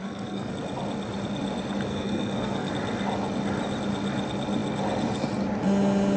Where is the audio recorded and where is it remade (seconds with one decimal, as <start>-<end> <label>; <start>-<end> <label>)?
0.0-0.5 remade; 0.5-1.9 recorded; 1.9-2.7 remade; 2.7-6.2 recorded